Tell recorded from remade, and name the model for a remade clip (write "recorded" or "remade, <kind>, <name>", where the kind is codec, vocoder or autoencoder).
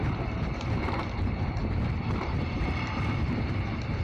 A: remade, vocoder, BigVGAN v2